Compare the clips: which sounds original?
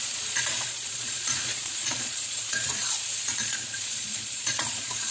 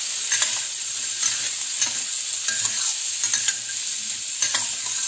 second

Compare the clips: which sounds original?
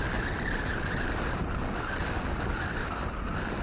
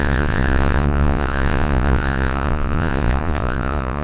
first